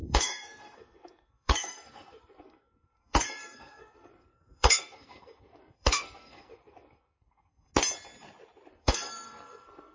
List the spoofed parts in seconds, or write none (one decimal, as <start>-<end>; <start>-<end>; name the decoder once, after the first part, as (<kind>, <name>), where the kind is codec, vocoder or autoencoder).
0.0-7.7 (codec, SNAC); 8.7-9.9